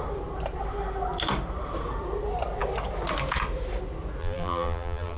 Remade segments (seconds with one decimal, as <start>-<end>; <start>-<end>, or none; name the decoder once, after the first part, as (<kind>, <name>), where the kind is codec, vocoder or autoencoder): 4.2-5.2 (vocoder, BigVGAN v2)